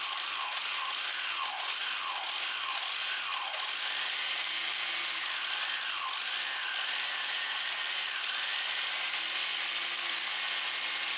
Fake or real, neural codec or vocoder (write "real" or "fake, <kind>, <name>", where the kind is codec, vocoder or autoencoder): real